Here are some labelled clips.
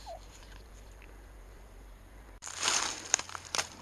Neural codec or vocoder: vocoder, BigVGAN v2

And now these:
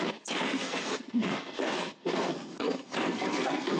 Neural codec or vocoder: codec, SNAC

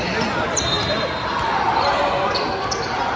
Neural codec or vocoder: none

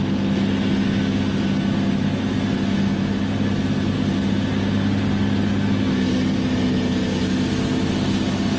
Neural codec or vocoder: none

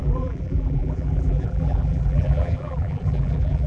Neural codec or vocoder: vocoder, BigVGAN v2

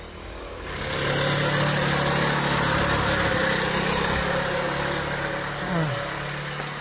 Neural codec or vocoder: none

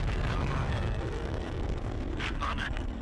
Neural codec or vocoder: codec, SNAC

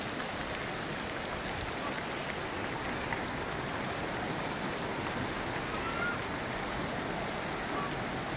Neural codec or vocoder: none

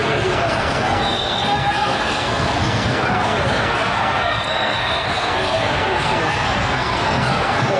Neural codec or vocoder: codec, SNAC